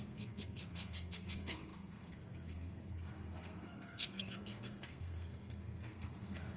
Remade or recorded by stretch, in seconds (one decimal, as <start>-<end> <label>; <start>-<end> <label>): 0.0-6.6 remade